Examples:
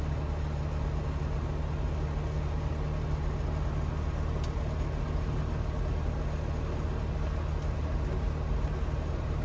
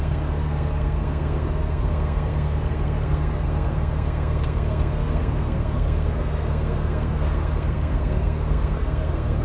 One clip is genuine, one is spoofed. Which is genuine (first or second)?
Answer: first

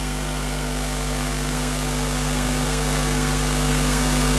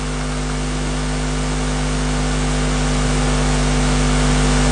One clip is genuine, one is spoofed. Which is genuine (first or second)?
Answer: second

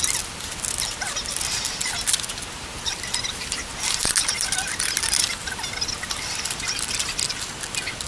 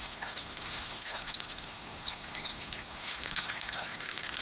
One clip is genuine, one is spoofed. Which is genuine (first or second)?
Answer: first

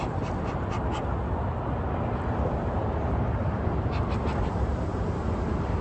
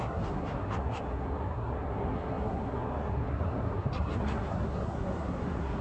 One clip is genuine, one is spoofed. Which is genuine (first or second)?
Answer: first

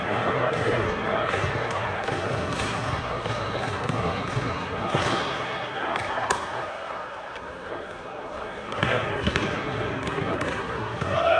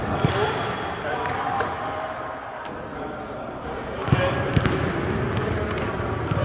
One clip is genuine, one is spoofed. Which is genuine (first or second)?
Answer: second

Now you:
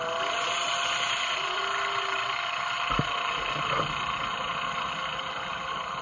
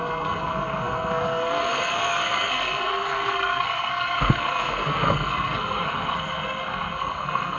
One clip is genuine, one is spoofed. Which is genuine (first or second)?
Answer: first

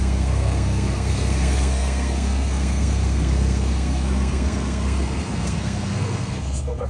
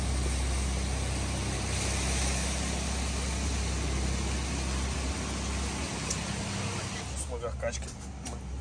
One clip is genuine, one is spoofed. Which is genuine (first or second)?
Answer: second